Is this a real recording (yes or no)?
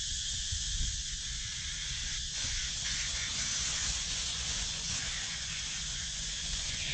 no